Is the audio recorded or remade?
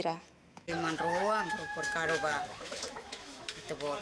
remade